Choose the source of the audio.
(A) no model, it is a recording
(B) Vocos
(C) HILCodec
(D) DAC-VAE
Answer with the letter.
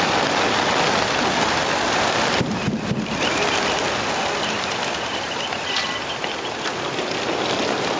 A